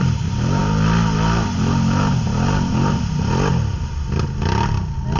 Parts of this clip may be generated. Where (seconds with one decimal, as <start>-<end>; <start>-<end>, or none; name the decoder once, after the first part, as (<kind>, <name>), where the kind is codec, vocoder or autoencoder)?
none